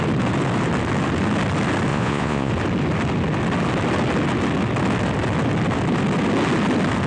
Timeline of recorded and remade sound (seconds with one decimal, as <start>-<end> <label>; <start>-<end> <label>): 0.0-1.9 recorded; 1.9-2.5 remade; 2.5-7.1 recorded